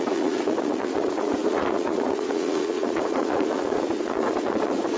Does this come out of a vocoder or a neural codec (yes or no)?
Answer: yes